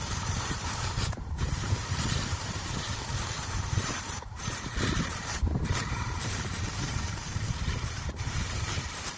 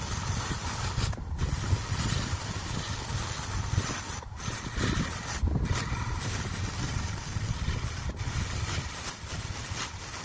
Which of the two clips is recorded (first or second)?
second